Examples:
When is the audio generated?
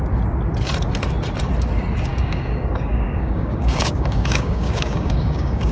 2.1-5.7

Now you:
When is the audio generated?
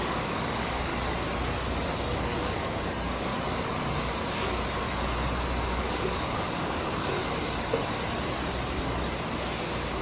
0.0-0.9; 2.2-3.3; 5.7-7.2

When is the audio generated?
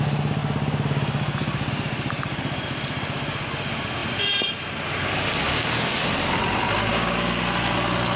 6.9-7.4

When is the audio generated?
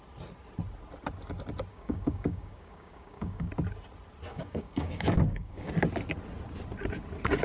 1.7-3.5; 4.3-5.7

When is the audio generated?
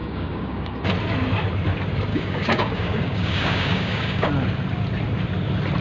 0.0-0.9; 2.1-4.3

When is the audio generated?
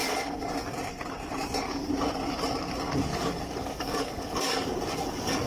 3.1-5.5